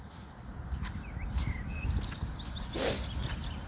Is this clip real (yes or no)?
yes